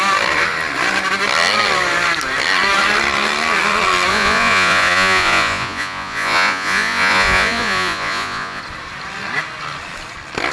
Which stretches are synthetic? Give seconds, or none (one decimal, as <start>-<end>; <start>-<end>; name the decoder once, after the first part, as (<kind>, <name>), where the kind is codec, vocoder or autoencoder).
4.1-8.6 (vocoder, Vocos)